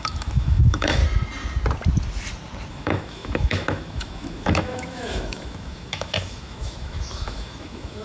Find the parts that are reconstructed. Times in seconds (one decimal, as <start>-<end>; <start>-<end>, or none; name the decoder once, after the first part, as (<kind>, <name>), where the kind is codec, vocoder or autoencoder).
0.0-1.0 (autoencoder, DAC-VAE); 2.7-8.0

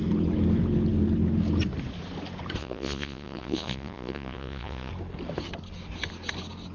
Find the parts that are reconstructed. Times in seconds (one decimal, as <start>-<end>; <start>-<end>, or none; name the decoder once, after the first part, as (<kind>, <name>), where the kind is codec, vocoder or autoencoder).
2.6-4.9 (vocoder, Vocos)

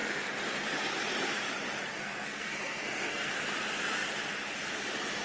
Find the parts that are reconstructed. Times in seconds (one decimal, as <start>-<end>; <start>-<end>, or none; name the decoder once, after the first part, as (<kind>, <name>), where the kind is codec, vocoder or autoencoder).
1.9-3.4 (codec, SNAC)

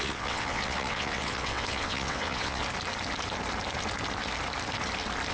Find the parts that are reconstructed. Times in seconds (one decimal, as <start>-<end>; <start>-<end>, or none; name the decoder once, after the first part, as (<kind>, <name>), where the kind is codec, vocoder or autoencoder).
0.0-2.6 (vocoder, WaveNeXt)

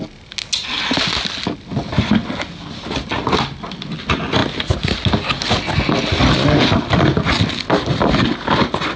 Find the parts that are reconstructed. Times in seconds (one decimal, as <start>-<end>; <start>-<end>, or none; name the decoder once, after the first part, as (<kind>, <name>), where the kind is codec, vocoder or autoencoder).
none

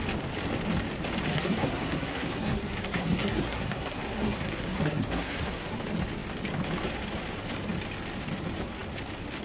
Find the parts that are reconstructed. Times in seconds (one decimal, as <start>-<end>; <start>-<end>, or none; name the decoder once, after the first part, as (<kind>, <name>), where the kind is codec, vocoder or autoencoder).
1.3-5.8 (codec, SNAC)

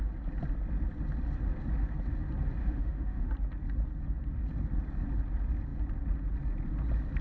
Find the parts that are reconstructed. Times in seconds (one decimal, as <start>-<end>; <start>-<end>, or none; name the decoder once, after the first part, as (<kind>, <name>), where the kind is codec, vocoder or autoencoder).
2.6-3.3 (autoencoder, DAC-VAE)

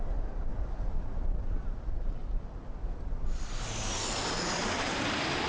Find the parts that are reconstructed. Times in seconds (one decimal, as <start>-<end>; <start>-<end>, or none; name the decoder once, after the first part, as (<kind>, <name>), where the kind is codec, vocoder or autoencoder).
0.0-0.5 (vocoder, BigVGAN v2); 1.4-2.2